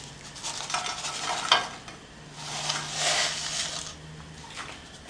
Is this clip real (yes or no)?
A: yes